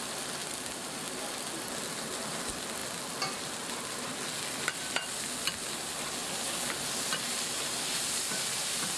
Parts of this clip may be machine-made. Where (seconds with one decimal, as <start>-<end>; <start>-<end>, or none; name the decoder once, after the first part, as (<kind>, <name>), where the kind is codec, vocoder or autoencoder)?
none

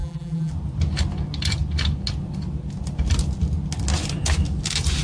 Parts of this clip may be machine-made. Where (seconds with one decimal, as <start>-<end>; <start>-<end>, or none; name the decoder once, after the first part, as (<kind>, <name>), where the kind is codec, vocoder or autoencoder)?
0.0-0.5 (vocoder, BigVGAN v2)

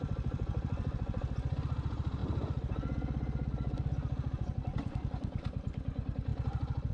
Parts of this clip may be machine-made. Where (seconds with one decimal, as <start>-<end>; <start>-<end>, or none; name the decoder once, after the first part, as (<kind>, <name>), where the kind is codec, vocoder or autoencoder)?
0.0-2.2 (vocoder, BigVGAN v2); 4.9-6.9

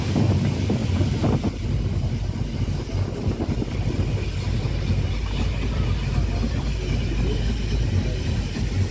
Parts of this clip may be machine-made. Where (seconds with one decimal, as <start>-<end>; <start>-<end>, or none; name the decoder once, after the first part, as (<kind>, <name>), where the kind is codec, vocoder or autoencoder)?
none

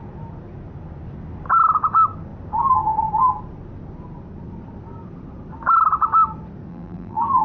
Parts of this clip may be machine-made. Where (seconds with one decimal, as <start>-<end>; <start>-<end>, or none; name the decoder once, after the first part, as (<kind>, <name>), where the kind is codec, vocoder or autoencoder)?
6.7-7.4 (vocoder, BigVGAN v2)

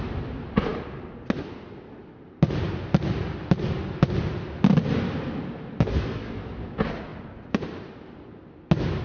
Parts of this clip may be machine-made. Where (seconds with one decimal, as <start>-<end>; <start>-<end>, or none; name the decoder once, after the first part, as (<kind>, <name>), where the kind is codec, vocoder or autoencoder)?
none

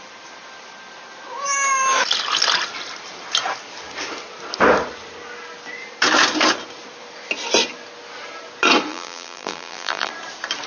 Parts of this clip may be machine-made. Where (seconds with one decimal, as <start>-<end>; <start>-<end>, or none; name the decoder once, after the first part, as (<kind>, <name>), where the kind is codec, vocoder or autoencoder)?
8.9-10.1 (vocoder, BigVGAN v2)